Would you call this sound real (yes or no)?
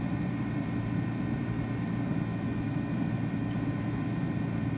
no